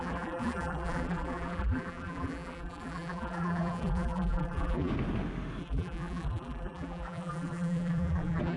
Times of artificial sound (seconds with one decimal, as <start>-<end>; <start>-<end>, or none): 0.0-4.9; 5.6-8.6